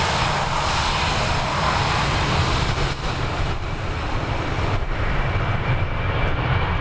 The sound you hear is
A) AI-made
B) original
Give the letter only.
A